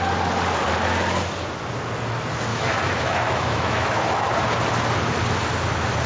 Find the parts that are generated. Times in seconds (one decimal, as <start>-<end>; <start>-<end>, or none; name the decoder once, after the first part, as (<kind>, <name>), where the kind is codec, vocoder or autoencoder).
2.5-4.3 (autoencoder, DAC-VAE)